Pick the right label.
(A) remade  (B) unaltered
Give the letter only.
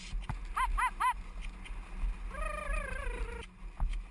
B